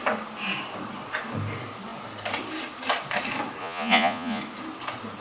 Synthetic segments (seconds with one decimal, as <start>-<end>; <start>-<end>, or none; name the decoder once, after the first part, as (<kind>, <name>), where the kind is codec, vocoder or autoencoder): 3.6-4.4 (vocoder, Vocos)